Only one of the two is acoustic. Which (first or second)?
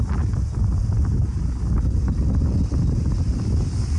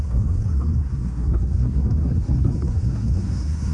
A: first